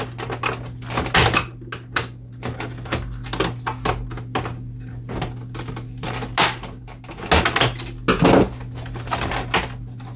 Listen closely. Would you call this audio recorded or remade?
recorded